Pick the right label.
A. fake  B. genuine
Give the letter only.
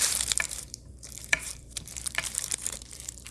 A